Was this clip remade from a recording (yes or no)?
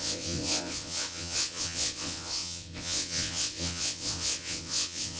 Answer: yes